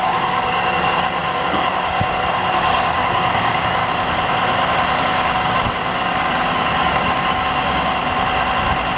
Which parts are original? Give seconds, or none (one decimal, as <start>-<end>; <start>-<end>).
3.8-5.0; 8.0-9.0